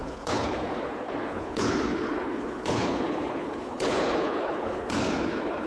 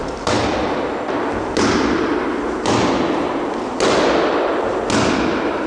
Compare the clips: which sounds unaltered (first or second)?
second